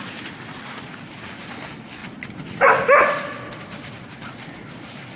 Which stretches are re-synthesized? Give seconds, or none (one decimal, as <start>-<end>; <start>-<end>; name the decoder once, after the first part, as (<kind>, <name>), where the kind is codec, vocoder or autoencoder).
none